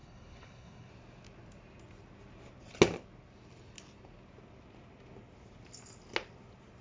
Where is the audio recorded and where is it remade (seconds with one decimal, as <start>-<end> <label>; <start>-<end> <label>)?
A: 0.0-0.9 remade; 0.9-6.8 recorded